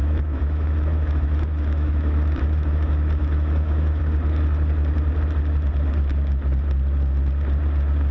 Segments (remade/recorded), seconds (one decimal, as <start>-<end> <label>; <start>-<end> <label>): 0.0-4.0 remade; 4.0-8.1 recorded